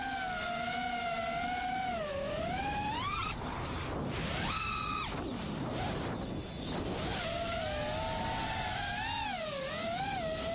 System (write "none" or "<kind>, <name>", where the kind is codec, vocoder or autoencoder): none